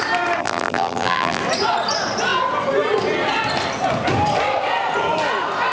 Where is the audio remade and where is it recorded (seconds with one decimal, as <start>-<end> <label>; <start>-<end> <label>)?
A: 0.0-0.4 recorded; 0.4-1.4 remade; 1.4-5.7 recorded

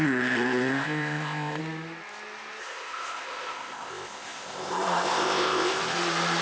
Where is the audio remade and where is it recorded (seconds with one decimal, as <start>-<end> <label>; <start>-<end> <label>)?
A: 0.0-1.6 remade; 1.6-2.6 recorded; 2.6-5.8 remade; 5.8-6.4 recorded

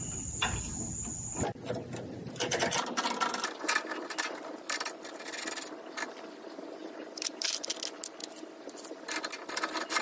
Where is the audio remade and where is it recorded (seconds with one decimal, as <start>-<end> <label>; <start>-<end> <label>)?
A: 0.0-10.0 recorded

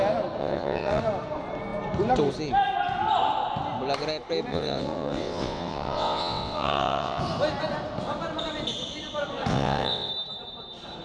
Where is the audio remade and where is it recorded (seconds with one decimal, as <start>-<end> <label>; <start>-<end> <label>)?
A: 0.0-0.4 recorded; 0.4-1.0 remade; 1.0-4.5 recorded; 4.5-7.2 remade; 7.2-9.5 recorded; 9.5-10.1 remade; 10.1-11.0 recorded